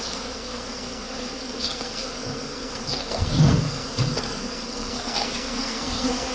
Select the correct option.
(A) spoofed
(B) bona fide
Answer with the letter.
A